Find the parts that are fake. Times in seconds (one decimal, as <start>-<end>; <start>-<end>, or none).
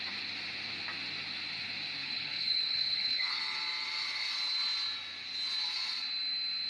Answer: 2.0-3.4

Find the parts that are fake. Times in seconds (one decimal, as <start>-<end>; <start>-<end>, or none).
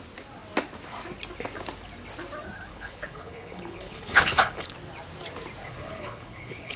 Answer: 2.7-4.7; 5.6-6.8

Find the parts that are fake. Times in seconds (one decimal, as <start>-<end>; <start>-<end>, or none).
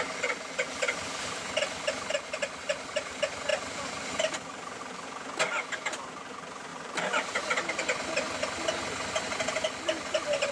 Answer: 6.7-7.3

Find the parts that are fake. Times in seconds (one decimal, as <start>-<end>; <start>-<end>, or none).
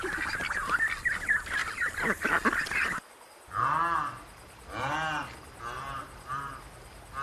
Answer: none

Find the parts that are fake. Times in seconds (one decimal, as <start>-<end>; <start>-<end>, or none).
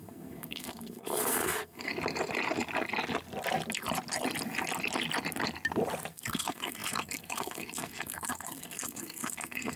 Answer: 0.0-1.9; 6.1-9.8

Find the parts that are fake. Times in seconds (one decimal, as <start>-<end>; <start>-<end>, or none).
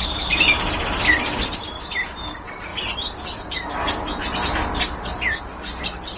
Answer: none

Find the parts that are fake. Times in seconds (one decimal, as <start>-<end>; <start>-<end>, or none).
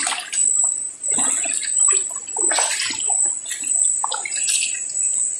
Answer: none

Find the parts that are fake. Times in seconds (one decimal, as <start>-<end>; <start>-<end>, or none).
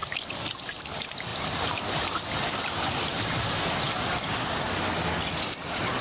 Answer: none